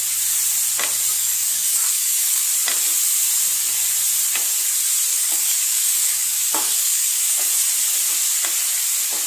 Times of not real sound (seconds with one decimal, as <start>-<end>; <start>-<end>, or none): 1.1-2.5; 5.1-7.5